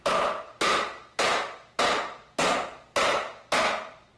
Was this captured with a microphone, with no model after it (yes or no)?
yes